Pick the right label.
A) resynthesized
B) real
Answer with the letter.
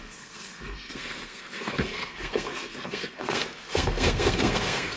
A